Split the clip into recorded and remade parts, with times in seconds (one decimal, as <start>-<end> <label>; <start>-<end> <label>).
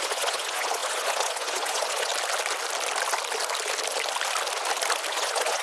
0.0-2.1 remade; 2.1-5.1 recorded; 5.1-5.6 remade